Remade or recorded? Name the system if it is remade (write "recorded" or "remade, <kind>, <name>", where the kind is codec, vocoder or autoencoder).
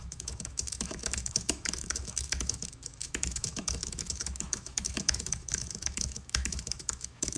remade, autoencoder, DAC-VAE